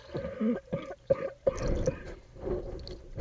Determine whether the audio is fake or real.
real